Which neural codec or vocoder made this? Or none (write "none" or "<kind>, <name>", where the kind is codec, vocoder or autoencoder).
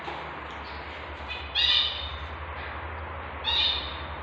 none